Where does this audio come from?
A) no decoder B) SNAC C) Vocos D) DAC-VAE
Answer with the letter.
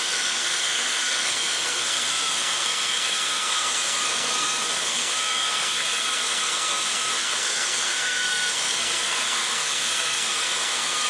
B